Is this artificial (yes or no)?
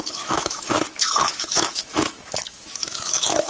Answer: yes